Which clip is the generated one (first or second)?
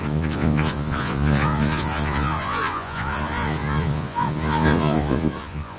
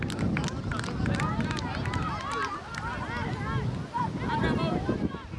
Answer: first